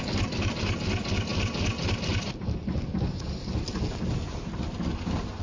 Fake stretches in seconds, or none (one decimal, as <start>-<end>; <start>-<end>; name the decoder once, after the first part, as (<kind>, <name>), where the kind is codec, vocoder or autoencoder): none